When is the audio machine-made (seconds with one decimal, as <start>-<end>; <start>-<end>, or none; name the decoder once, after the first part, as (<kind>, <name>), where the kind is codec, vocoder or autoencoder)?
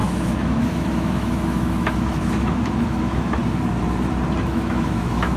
0.0-3.4 (autoencoder, DAC-VAE); 4.4-5.4